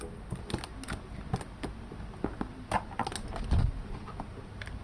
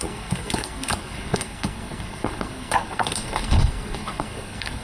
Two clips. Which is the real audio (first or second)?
first